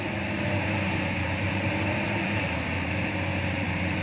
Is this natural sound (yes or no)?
no